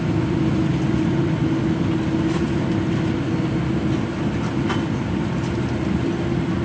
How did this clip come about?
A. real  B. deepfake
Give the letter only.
B